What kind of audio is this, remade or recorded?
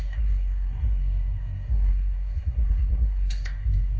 remade